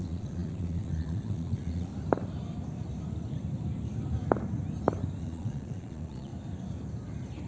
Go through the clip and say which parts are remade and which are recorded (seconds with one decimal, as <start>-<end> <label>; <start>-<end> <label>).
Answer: 0.0-1.9 remade; 1.9-5.2 recorded; 5.2-6.3 remade; 6.3-7.5 recorded